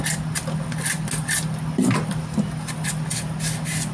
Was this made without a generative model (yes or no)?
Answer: yes